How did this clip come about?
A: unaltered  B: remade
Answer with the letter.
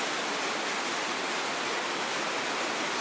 A